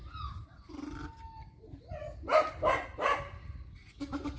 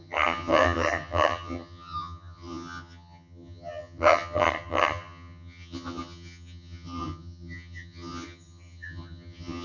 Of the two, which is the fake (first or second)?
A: second